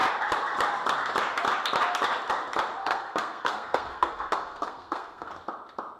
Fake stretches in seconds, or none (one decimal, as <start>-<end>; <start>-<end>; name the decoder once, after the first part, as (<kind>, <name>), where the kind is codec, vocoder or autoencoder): 2.8-5.3 (codec, SNAC)